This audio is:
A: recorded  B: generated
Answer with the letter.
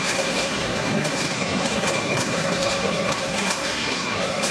B